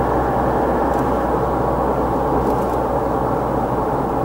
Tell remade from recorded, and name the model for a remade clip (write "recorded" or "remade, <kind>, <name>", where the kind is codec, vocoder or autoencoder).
recorded